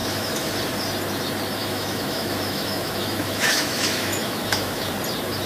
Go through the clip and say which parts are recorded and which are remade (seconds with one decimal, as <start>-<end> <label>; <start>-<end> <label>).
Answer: 0.0-0.5 remade; 0.5-1.6 recorded; 1.6-4.9 remade; 4.9-5.5 recorded